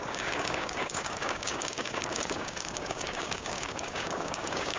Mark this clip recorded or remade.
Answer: remade